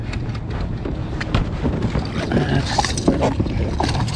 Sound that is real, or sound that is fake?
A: real